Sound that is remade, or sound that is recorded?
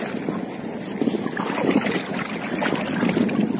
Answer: recorded